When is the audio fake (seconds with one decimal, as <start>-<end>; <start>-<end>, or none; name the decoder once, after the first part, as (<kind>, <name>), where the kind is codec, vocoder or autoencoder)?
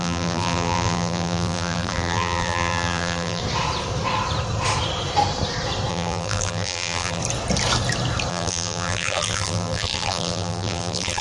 0.0-3.4 (vocoder, BigVGAN v2); 5.9-7.2; 8.3-11.2